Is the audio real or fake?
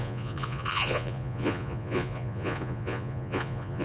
fake